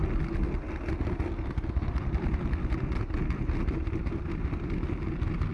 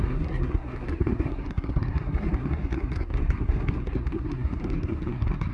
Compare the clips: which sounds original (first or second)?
first